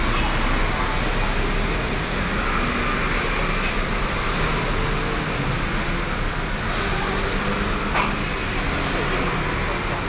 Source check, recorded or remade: recorded